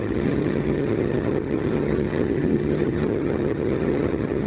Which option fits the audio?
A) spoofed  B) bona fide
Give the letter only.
A